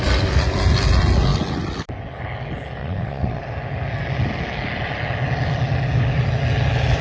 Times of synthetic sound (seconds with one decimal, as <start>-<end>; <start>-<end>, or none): 2.8-3.4